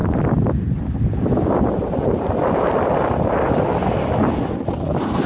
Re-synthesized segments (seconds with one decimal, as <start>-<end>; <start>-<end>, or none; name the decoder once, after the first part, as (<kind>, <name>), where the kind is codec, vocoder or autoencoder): 0.0-3.2 (vocoder, BigVGAN v2)